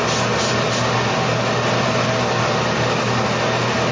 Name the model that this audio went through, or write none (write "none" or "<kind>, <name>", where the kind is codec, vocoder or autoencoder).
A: none